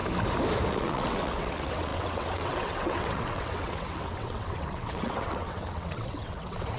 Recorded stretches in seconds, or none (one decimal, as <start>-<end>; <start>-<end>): 0.0-0.7